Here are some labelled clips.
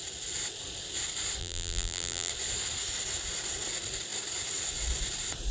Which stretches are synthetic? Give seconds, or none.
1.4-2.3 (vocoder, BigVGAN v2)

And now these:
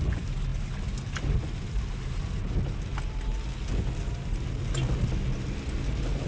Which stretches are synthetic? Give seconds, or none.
none

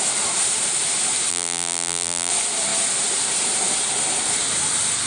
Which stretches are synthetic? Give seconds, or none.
1.3-2.3 (vocoder, BigVGAN v2)